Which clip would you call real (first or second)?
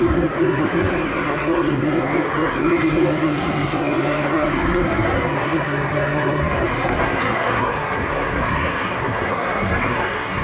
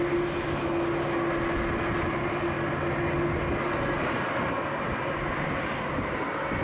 second